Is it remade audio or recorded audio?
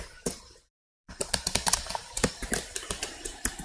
remade